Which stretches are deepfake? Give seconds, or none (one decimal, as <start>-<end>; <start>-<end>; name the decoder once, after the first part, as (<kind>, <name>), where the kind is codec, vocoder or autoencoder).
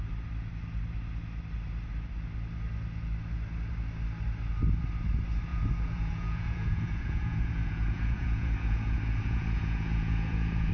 5.5-10.7 (vocoder, Vocos)